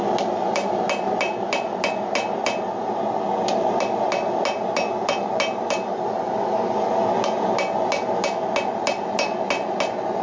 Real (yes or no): yes